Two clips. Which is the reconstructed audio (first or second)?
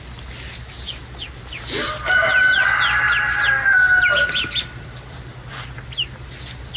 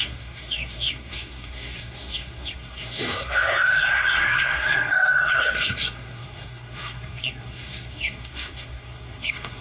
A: second